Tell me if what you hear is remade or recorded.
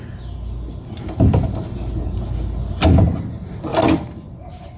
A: recorded